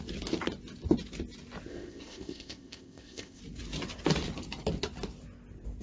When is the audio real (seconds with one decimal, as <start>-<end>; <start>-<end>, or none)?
0.0-1.7; 3.4-5.8